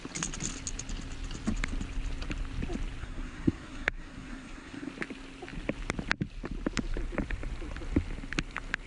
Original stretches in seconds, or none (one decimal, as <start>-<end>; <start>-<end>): 0.0-3.0; 4.9-8.9